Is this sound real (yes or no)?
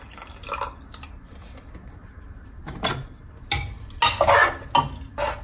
yes